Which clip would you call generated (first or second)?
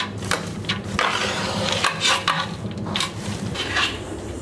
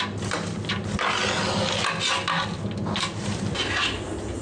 first